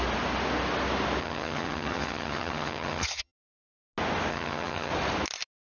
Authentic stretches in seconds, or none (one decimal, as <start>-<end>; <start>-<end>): 0.0-1.2; 3.3-4.3; 4.9-5.7